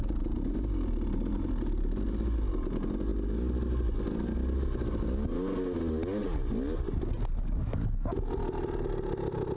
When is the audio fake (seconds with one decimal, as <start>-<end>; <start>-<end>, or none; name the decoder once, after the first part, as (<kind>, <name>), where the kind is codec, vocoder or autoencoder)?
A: none